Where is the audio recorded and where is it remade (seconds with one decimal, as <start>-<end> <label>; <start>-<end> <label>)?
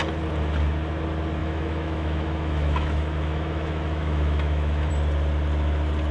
0.0-1.4 recorded; 1.4-4.9 remade; 4.9-6.1 recorded